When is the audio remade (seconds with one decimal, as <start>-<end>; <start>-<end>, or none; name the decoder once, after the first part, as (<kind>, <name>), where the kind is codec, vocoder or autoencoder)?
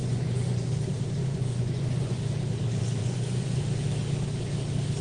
0.0-0.7 (vocoder, Vocos); 1.2-2.2; 3.0-3.6